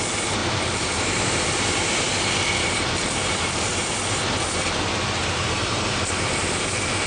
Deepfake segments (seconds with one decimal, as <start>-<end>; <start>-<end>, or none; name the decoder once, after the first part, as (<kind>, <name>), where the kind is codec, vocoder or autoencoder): 0.4-1.9 (vocoder, BigVGAN v2); 3.2-4.2; 5.2-7.1